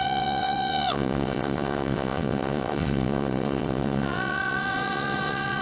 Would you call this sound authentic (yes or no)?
no